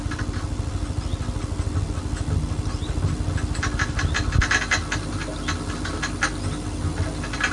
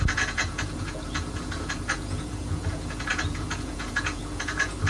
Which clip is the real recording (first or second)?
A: first